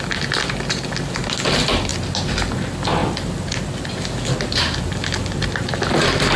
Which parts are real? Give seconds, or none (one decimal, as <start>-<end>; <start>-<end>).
0.0-6.4